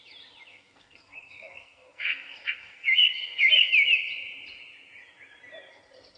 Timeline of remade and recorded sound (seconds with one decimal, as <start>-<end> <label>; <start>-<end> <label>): 0.0-0.5 recorded; 0.5-3.7 remade; 3.7-6.2 recorded